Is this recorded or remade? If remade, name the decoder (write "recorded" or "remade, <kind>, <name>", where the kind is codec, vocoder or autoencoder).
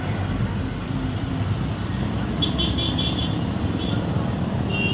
recorded